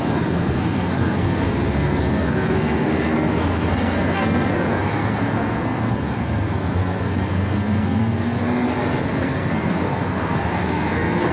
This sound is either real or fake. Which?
fake